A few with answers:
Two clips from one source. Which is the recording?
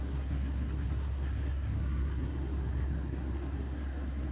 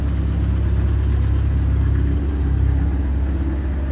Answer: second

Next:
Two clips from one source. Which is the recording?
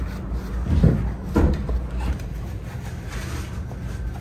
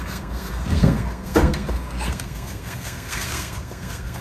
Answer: first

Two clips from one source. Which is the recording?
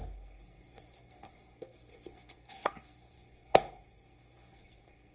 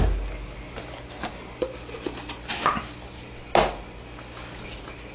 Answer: second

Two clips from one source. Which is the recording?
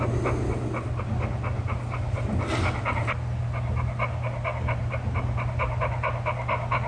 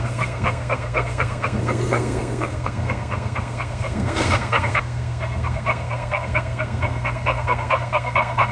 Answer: first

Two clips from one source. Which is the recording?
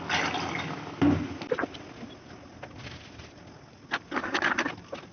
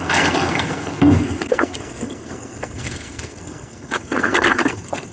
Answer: first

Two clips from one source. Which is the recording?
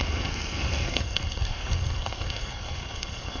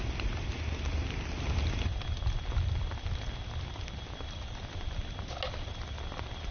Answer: second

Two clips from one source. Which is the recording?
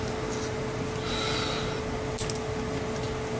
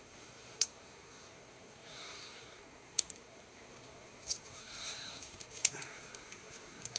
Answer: first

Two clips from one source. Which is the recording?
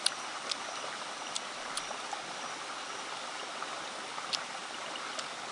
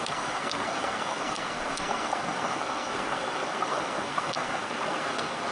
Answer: first